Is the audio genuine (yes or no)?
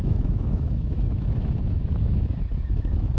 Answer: no